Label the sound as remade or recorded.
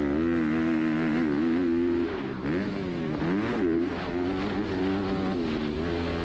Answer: recorded